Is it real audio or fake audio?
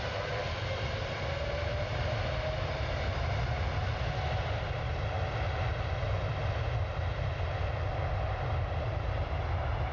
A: real